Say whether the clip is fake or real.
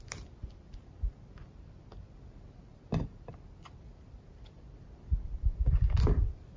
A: real